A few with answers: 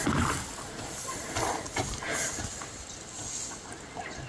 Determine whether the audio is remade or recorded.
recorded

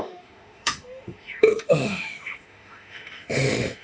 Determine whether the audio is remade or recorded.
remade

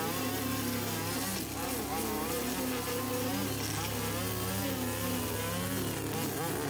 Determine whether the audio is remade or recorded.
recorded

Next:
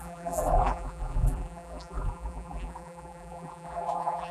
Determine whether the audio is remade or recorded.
remade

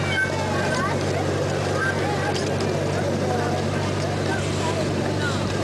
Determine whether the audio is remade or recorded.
recorded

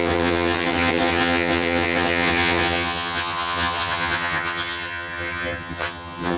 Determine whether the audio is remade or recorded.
remade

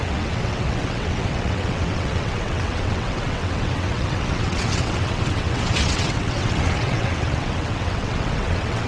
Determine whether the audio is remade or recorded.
remade